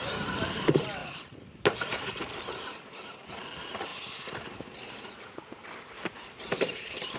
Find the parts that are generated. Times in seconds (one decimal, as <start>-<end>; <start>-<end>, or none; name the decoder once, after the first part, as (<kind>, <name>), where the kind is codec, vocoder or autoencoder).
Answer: 0.0-1.0 (vocoder, BigVGAN v2); 1.7-3.9; 6.4-7.2